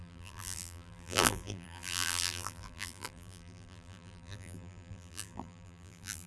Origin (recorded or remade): remade